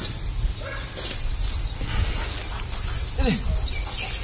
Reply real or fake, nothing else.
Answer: real